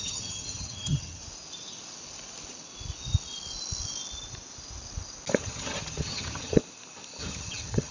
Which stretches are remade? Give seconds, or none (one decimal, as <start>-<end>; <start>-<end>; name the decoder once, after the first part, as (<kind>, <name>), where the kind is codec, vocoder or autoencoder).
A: 0.0-1.2 (vocoder, HiFi-GAN); 5.4-6.6; 7.2-7.9